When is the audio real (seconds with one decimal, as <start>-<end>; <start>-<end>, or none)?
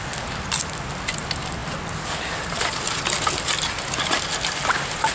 0.0-5.1